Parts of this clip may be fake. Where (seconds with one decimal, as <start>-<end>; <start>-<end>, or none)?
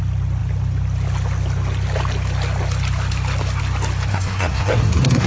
4.1-5.3